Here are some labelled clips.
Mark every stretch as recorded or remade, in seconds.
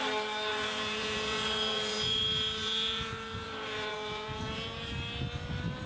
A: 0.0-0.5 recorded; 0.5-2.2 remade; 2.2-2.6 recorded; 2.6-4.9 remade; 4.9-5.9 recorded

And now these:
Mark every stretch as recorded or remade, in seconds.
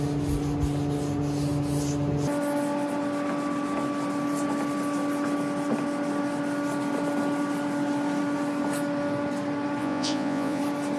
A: 0.0-9.8 recorded; 9.8-10.6 remade; 10.6-11.0 recorded